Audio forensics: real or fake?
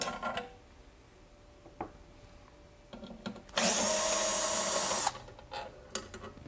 real